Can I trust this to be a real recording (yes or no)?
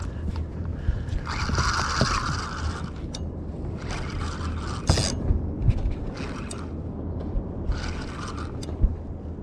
yes